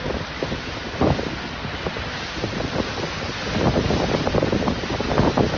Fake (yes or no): no